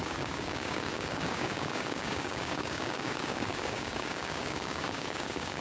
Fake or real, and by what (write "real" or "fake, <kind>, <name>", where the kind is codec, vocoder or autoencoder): fake, codec, DAC